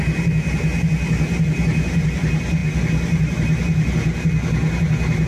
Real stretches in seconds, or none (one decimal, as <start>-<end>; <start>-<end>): 0.0-5.3